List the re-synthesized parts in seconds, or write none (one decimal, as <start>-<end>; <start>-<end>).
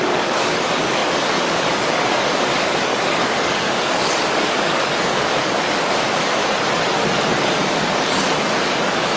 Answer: 0.0-6.4; 7.4-9.2